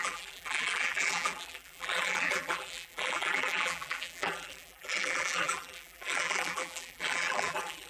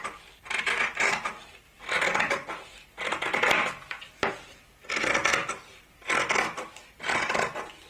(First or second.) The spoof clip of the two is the first